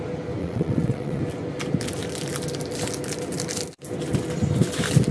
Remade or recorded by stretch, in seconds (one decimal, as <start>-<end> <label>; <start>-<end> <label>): 0.0-0.4 recorded; 0.4-1.2 remade; 1.2-5.1 recorded